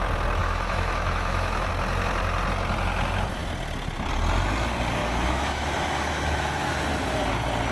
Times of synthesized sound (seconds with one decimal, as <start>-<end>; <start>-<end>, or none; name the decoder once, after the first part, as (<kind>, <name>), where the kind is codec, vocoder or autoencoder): 0.4-1.7 (autoencoder, DAC-VAE); 5.0-6.7